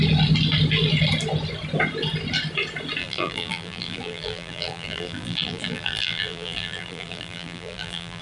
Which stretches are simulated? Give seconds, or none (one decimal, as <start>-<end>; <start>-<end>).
3.0-8.2